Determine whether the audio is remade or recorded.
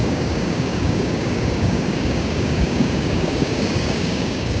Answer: remade